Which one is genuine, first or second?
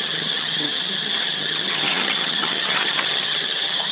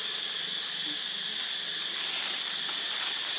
second